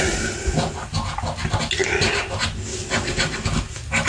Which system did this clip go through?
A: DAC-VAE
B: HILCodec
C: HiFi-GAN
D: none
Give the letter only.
D